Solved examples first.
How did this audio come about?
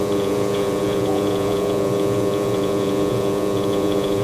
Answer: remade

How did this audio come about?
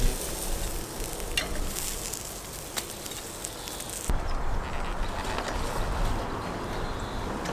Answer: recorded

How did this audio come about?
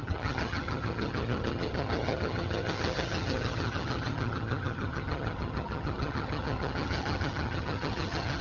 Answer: remade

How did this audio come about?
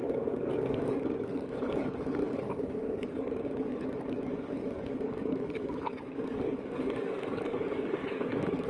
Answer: remade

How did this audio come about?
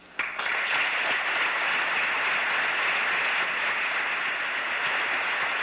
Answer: recorded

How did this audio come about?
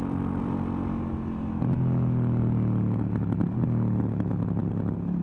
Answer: recorded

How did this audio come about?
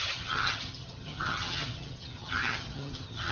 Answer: remade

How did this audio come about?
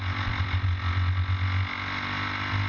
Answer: recorded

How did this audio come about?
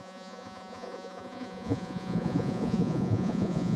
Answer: remade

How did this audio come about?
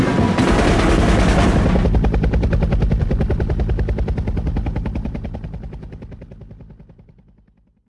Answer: recorded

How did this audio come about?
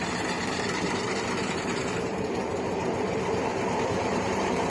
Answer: remade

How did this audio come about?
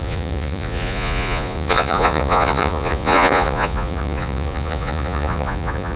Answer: remade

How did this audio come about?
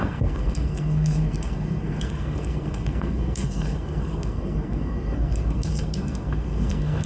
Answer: remade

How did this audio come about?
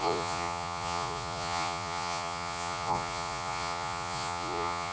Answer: remade